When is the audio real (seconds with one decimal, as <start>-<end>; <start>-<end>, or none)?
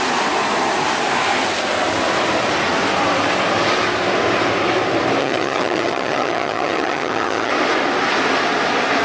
0.0-5.2; 7.5-9.0